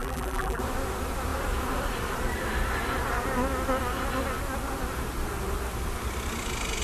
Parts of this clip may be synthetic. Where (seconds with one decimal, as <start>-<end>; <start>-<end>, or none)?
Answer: 0.0-0.6